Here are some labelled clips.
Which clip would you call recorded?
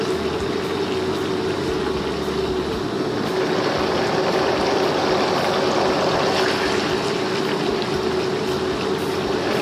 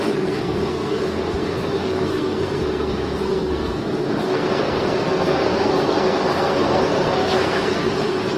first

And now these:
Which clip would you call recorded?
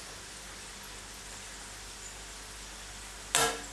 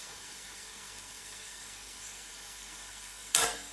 first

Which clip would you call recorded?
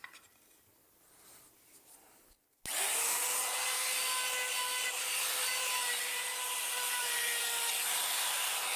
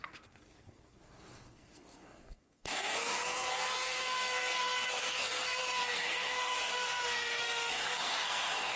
first